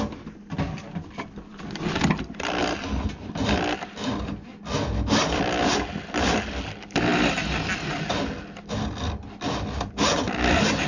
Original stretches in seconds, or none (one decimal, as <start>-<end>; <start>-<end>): 0.0-10.9